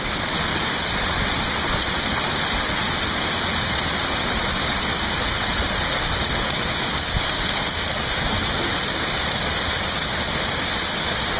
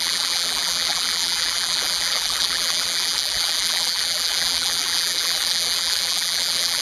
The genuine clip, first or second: first